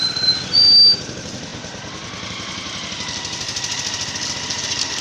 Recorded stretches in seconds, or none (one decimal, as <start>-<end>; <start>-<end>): 0.0-5.0